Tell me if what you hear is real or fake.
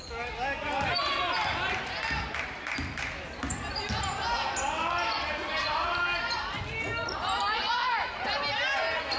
real